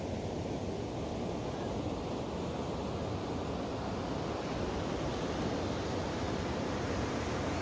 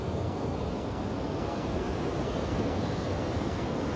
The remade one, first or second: second